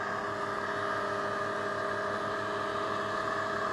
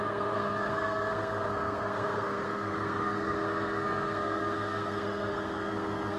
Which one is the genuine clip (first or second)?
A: first